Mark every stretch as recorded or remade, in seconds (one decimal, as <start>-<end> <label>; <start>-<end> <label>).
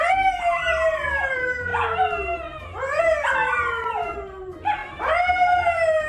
0.0-1.7 remade; 1.7-3.0 recorded; 3.0-6.1 remade